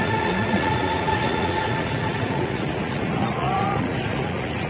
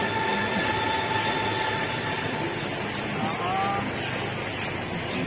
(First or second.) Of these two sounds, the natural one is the second